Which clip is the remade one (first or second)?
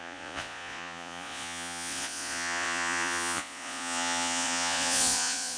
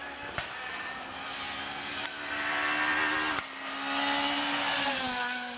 first